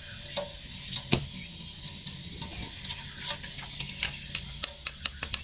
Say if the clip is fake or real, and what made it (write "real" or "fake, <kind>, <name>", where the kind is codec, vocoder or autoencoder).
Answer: real